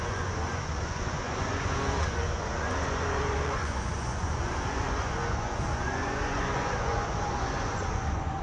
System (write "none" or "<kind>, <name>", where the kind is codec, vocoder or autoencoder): vocoder, Vocos